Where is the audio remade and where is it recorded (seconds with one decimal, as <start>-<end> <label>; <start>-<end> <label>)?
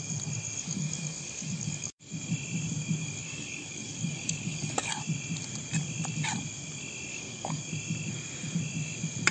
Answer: 0.0-0.6 recorded; 0.6-2.1 remade; 2.1-3.0 recorded; 3.0-4.9 remade; 4.9-7.1 recorded; 7.1-7.6 remade; 7.6-9.3 recorded